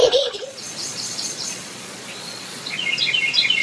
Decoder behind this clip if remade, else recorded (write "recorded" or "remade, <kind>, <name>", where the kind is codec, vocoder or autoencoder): remade, vocoder, Vocos